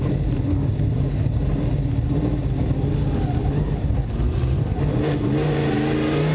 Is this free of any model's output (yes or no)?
yes